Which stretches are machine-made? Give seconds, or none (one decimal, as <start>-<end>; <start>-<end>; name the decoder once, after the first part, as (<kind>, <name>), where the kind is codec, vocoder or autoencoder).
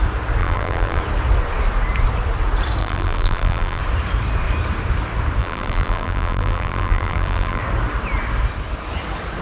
0.4-1.0 (vocoder, BigVGAN v2); 2.8-3.8; 5.4-7.6